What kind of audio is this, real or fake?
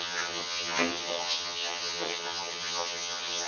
fake